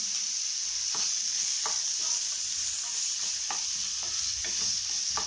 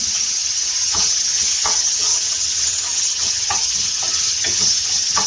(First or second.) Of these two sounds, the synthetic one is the second